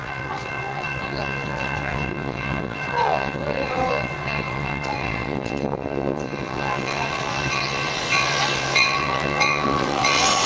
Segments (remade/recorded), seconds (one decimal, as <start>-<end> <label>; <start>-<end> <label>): 0.0-10.5 remade